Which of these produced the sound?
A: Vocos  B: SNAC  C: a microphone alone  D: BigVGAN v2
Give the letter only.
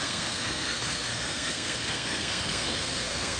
B